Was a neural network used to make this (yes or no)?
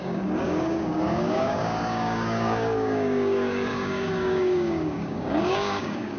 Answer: yes